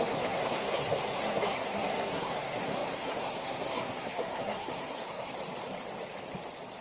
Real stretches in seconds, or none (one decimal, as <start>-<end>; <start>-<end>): 5.3-6.8